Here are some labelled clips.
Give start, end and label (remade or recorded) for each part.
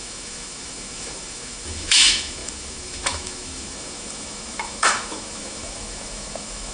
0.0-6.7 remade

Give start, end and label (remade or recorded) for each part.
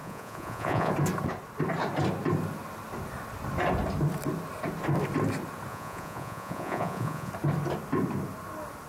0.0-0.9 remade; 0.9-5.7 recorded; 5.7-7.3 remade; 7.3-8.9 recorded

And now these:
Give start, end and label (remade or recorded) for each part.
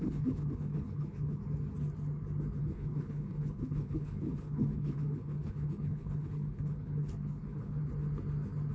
0.0-1.4 remade; 1.4-2.6 recorded; 2.6-7.8 remade; 7.8-8.7 recorded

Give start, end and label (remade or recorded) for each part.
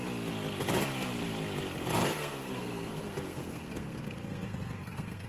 0.0-2.0 recorded; 2.0-5.3 remade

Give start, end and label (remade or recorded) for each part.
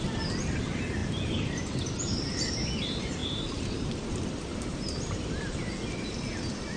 0.0-3.2 recorded; 3.2-4.0 remade; 4.0-4.5 recorded; 4.5-5.8 remade; 5.8-6.8 recorded